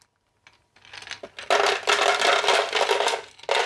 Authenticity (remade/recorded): recorded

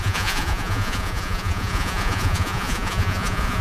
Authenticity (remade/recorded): remade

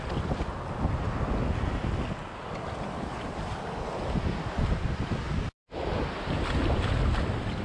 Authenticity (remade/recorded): recorded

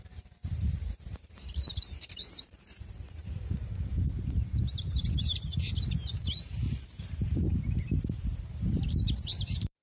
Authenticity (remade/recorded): remade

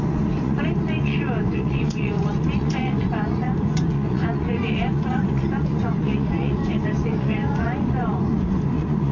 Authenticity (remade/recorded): remade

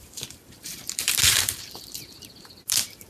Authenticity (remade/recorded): remade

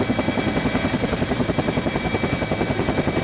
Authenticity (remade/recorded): remade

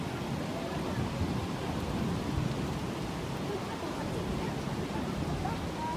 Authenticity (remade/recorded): recorded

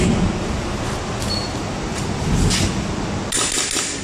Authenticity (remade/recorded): recorded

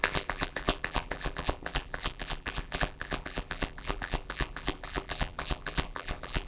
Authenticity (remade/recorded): remade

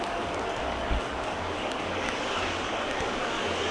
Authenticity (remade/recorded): remade